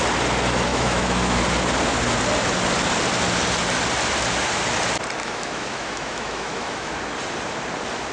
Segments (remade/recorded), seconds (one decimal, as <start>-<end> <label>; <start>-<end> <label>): 0.0-0.7 recorded; 0.7-1.4 remade; 1.4-5.2 recorded; 5.2-6.9 remade; 6.9-8.1 recorded